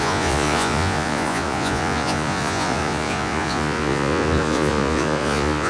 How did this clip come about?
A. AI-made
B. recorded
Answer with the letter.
A